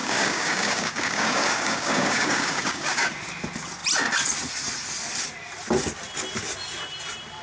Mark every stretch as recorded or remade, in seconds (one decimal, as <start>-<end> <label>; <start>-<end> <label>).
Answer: 0.0-3.1 remade; 3.1-7.4 recorded